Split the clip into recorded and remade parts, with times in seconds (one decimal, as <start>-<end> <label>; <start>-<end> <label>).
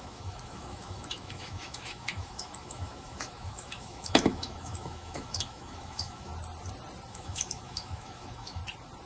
0.0-6.3 remade; 6.3-7.1 recorded; 7.1-8.6 remade; 8.6-9.1 recorded